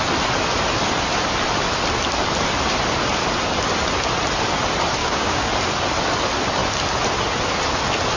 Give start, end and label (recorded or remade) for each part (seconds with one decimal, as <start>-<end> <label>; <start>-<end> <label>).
0.0-5.0 recorded; 5.0-5.5 remade; 5.5-8.2 recorded